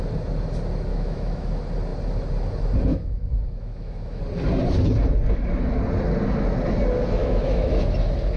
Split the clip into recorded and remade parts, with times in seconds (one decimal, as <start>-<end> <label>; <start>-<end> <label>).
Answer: 0.0-0.9 recorded; 0.9-1.5 remade; 1.5-2.9 recorded; 2.9-4.2 remade; 4.2-7.2 recorded; 7.2-7.8 remade; 7.8-8.4 recorded